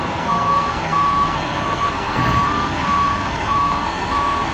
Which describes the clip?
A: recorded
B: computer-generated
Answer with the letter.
B